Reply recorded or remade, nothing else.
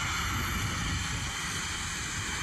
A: recorded